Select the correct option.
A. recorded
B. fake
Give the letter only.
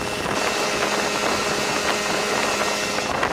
A